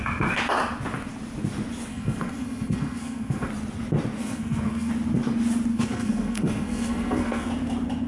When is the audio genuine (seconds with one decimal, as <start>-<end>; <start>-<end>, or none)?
0.0-1.9; 3.5-4.2; 4.9-5.7; 7.5-8.1